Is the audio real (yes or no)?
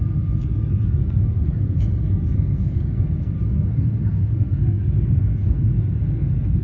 no